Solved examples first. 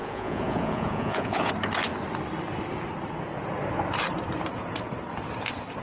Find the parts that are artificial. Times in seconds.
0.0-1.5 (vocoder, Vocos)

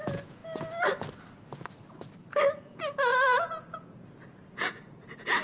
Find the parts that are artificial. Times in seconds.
0.0-0.4 (vocoder, Vocos); 2.5-5.4

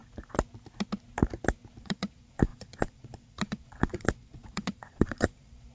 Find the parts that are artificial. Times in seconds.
1.8-5.7 (vocoder, Vocos)

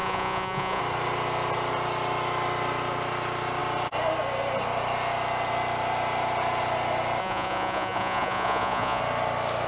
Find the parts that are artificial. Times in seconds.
0.0-0.8 (vocoder, Vocos); 7.2-9.0